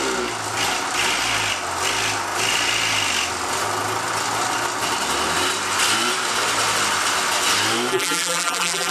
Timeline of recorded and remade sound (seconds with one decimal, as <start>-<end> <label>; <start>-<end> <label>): 0.0-7.9 recorded; 7.9-8.9 remade